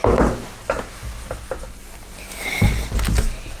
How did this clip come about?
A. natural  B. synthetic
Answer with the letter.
A